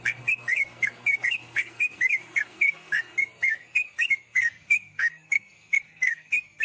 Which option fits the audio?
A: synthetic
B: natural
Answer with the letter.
A